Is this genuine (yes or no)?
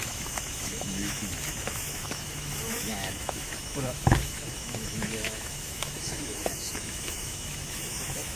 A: no